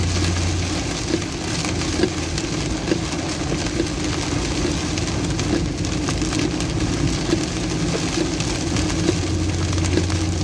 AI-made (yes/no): no